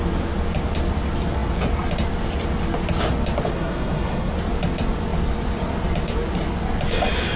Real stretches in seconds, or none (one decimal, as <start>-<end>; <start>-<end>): 0.0-3.5; 4.3-7.4